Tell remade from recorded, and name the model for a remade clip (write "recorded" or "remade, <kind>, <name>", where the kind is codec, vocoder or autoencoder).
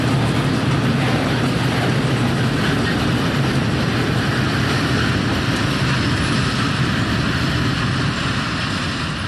recorded